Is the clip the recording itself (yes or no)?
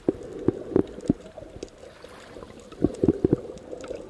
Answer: yes